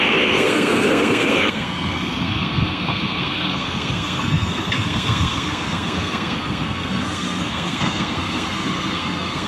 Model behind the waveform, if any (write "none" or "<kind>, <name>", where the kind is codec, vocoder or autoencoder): codec, SNAC